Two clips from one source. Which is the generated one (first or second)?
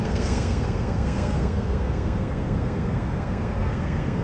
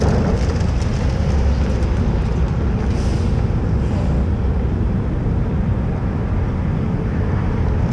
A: first